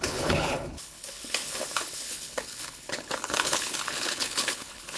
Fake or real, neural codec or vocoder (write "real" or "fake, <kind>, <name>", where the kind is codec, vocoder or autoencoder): fake, codec, HILCodec